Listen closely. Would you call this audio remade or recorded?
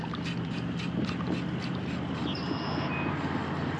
recorded